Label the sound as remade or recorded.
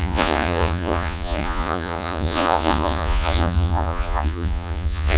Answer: remade